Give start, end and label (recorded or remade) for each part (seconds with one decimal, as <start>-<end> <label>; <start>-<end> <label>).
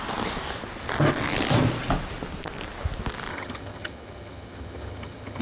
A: 0.0-3.3 recorded; 3.3-5.4 remade